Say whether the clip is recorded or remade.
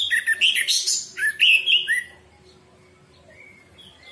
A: recorded